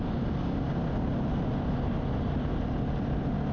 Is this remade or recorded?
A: recorded